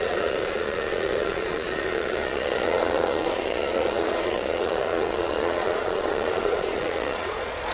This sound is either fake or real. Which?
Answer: fake